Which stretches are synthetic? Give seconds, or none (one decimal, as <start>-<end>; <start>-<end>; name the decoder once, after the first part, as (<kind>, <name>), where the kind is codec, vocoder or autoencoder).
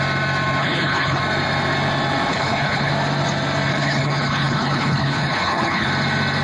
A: 0.6-1.2 (codec, HILCodec); 2.3-2.9; 3.7-5.9